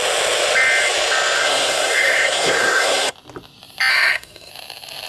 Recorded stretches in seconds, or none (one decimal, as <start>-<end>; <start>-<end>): 0.0-1.4; 3.1-3.9; 4.5-5.1